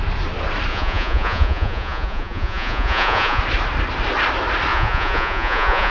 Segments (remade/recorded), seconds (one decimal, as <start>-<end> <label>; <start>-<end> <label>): 0.0-0.7 recorded; 0.7-3.4 remade; 3.4-4.7 recorded; 4.7-5.9 remade